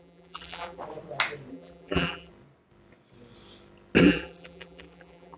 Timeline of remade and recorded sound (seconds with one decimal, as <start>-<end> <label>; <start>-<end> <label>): 0.0-0.8 remade; 0.8-1.5 recorded; 1.5-2.3 remade; 2.3-4.0 recorded; 4.0-5.4 remade